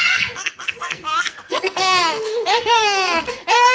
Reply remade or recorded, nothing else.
remade